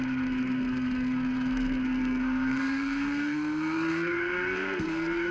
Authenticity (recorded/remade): remade